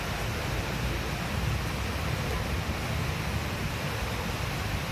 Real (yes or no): yes